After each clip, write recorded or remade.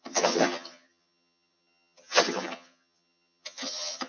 remade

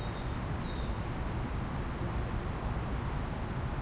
recorded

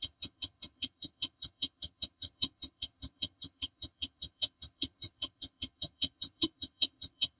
remade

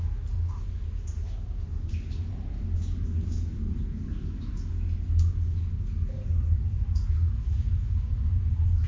recorded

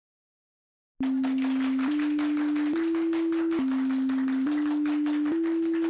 recorded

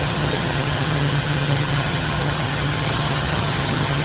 remade